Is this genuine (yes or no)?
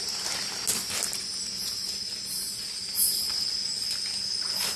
yes